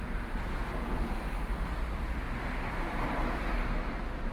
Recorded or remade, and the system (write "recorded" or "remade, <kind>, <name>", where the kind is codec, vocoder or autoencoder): recorded